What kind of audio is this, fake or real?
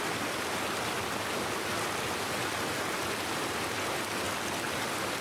real